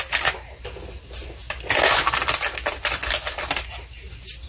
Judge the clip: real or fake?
real